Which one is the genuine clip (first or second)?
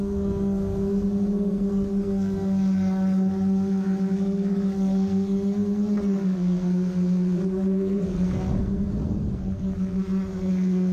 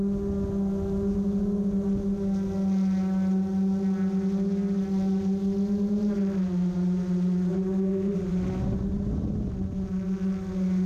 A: second